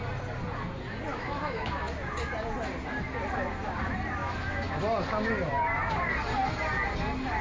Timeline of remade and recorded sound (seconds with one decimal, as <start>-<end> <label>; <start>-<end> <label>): 0.0-1.1 recorded; 1.1-2.0 remade; 2.0-4.2 recorded; 4.2-4.8 remade; 4.8-7.4 recorded